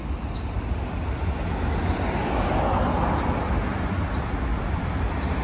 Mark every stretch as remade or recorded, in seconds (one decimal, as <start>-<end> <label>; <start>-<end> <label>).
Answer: 0.0-4.5 recorded; 4.5-5.4 remade